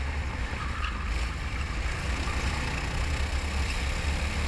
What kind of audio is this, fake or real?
real